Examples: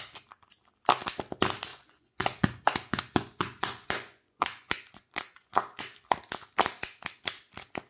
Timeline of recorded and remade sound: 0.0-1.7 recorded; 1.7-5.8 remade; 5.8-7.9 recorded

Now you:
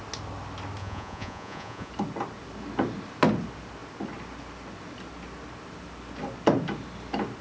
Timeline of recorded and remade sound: 0.0-0.8 recorded; 0.8-1.9 remade; 1.9-7.4 recorded

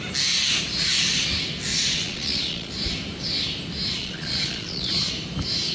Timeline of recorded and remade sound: 0.0-1.7 recorded; 1.7-2.7 remade; 2.7-4.0 recorded; 4.0-5.1 remade; 5.1-5.7 recorded

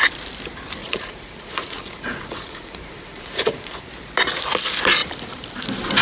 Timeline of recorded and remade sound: 0.0-0.8 recorded; 0.8-3.9 remade; 3.9-6.0 recorded

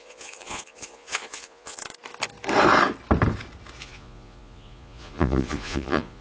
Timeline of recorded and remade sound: 0.0-1.8 remade; 1.8-3.8 recorded; 3.8-6.2 remade